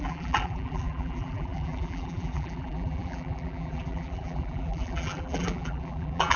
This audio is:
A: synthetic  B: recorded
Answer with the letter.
A